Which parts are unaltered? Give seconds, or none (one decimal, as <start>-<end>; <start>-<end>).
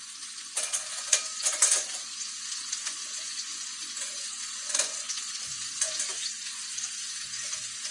none